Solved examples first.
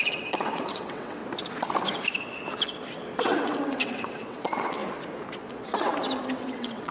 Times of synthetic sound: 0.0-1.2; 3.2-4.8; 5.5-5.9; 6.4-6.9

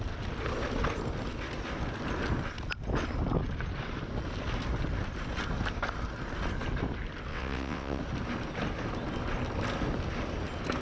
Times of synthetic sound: 7.3-8.0

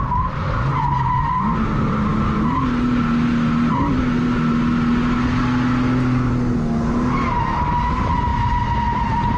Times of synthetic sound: none

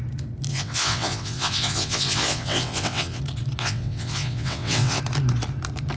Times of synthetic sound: 0.5-3.2; 3.6-5.0

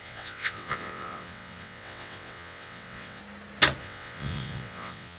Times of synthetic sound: 0.0-3.2; 3.8-5.2

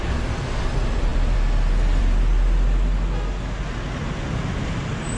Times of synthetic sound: none